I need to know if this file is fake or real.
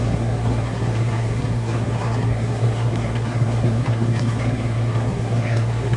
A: fake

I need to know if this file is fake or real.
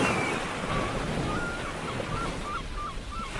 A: real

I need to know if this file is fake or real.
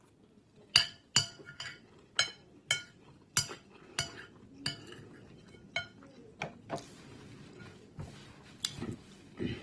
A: real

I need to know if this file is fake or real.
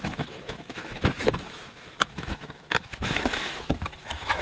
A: fake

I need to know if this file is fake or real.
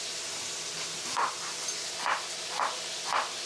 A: real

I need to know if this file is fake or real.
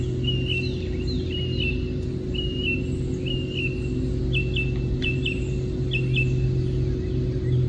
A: real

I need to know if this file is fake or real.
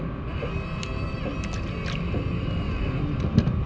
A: real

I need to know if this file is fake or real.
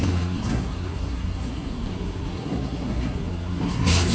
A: fake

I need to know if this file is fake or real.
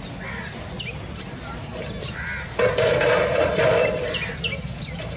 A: real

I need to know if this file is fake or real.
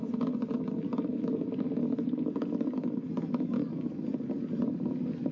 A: real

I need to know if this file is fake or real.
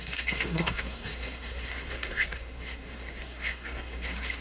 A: fake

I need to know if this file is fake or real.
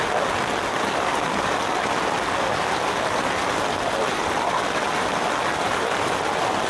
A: real